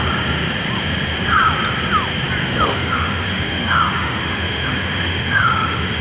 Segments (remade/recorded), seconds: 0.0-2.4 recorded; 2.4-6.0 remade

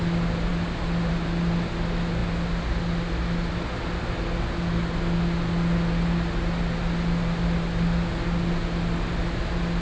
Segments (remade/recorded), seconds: 0.0-9.8 recorded